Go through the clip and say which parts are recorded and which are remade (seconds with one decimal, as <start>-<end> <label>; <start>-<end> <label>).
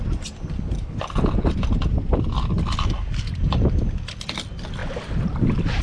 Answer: 0.0-5.8 recorded